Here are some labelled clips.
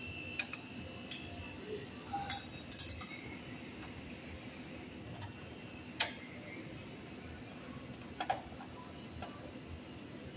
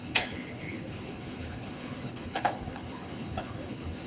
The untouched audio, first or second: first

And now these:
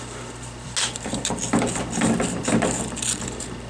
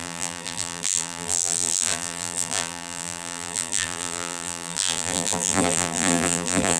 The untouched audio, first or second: first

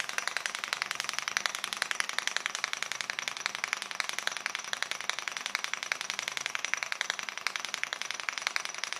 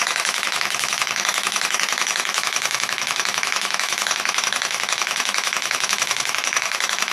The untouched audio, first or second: first